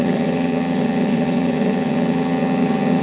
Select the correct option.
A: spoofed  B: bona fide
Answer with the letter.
A